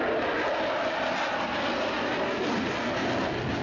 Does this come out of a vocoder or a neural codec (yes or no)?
no